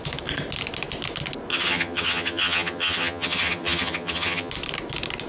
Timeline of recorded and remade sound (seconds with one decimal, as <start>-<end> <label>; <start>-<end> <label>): 0.0-1.5 recorded; 1.5-4.5 remade; 4.5-5.3 recorded